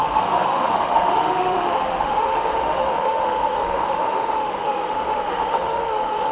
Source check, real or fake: fake